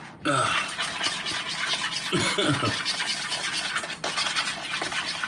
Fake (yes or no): no